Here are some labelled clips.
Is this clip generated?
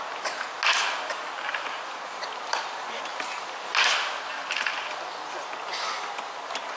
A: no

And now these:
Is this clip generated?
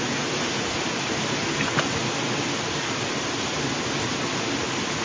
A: no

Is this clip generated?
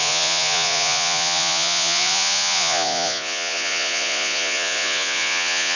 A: yes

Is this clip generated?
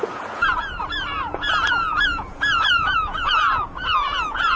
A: yes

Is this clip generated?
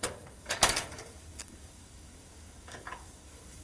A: yes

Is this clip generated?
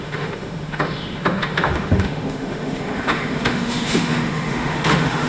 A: yes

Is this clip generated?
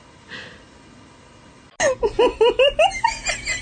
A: no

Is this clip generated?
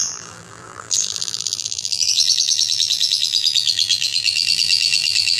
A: yes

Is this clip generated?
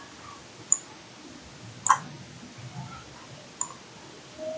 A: no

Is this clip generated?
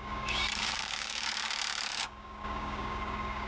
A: yes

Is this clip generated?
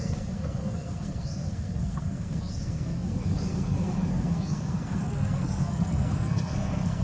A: yes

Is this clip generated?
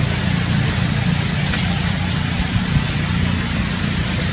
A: no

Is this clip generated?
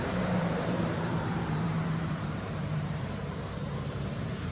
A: yes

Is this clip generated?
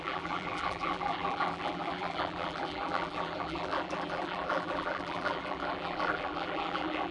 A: yes